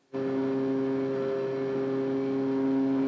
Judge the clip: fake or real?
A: real